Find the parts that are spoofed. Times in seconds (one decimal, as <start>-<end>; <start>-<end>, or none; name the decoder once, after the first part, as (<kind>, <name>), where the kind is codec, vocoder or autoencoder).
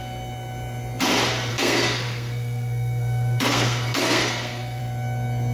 1.5-4.8 (codec, SNAC)